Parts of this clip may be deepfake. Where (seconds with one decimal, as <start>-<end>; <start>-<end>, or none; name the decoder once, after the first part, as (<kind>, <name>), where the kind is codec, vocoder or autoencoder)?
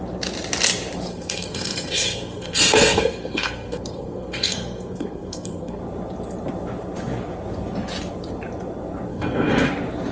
1.1-5.8 (codec, SNAC); 9.1-9.7